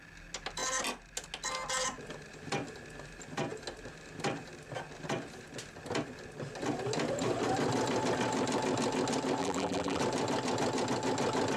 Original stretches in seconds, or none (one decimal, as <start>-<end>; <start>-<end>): 0.0-9.4; 10.0-11.6